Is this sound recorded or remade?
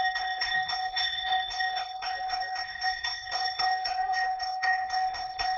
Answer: remade